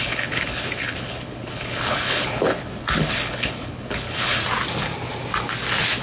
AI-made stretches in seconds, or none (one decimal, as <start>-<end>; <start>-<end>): 0.0-4.4